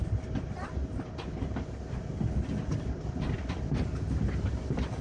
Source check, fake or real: real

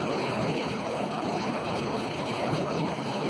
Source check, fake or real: fake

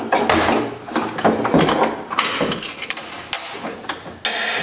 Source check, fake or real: real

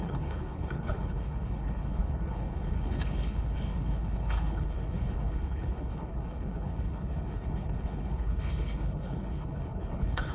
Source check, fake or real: fake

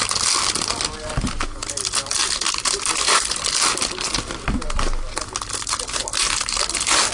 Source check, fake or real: real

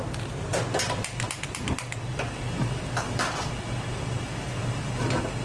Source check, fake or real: real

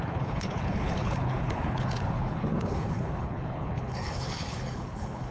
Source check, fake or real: fake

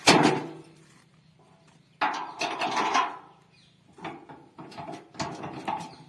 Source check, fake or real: real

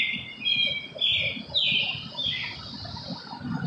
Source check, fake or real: real